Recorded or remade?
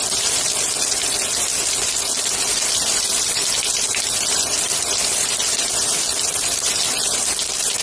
remade